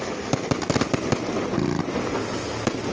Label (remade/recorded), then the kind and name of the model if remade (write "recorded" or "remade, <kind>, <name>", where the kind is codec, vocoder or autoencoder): recorded